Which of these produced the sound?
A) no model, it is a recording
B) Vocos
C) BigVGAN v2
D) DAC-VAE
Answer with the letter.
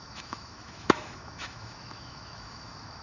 D